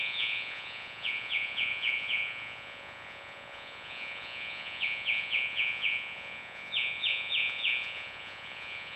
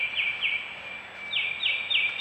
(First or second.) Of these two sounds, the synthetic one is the first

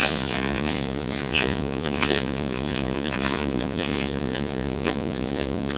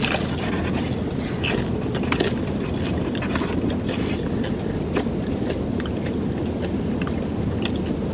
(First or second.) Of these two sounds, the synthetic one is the first